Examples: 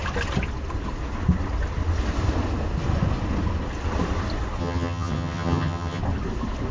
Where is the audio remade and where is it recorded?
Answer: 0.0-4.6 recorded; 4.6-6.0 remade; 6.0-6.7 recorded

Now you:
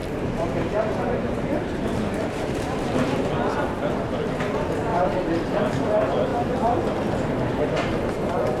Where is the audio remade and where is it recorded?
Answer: 0.0-3.3 remade; 3.3-4.9 recorded; 4.9-5.6 remade; 5.6-8.6 recorded

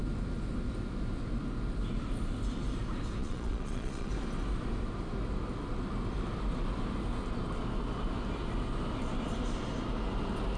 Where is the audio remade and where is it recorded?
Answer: 0.0-3.2 recorded; 3.2-4.1 remade; 4.1-10.6 recorded

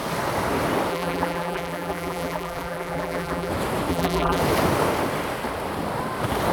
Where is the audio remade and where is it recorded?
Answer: 0.0-0.9 recorded; 0.9-3.5 remade; 3.5-3.9 recorded; 3.9-4.4 remade; 4.4-6.5 recorded

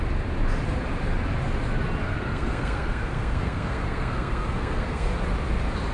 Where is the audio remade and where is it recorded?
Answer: 0.0-2.0 recorded; 2.0-5.1 remade; 5.1-5.9 recorded

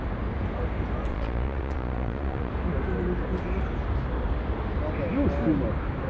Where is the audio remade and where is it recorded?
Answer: 0.0-1.1 recorded; 1.1-2.5 remade; 2.5-6.1 recorded

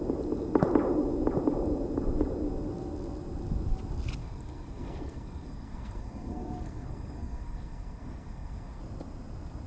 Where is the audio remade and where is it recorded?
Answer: 0.0-4.2 recorded; 4.2-8.8 remade; 8.8-9.7 recorded

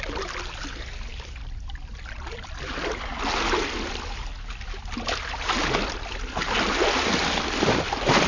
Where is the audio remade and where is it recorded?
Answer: 0.0-8.3 recorded